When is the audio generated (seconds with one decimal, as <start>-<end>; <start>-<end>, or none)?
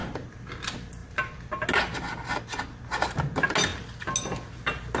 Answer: none